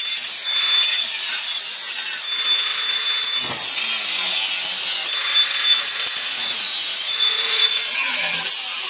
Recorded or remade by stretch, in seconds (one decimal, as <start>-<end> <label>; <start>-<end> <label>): 0.0-5.7 recorded; 5.7-8.5 remade; 8.5-8.9 recorded